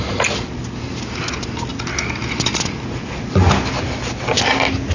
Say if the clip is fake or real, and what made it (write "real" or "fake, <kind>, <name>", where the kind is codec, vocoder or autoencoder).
real